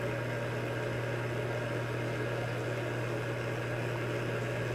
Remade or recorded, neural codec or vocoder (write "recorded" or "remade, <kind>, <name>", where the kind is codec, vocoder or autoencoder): recorded